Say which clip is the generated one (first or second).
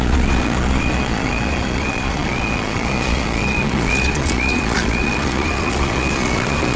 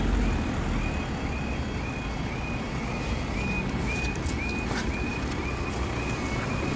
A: first